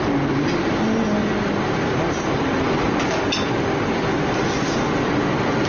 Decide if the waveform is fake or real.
real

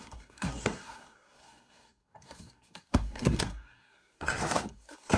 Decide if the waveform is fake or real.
fake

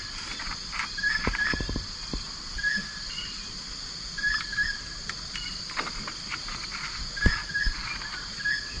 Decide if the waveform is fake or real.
real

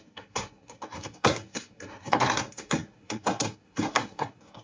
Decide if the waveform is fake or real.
fake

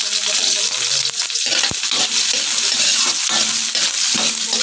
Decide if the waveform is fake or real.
real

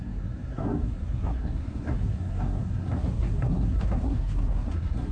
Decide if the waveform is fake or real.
fake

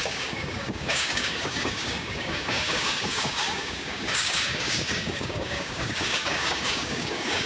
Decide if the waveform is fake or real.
fake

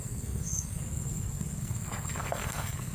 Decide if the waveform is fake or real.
fake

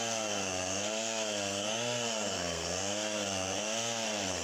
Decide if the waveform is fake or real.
fake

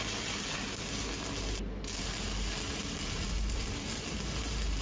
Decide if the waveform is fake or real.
real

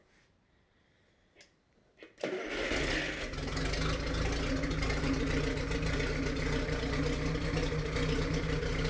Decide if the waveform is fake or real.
real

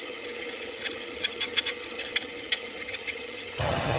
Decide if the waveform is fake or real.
fake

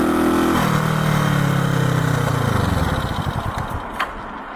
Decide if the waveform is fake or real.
real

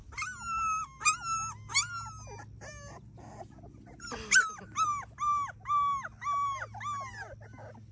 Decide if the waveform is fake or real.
real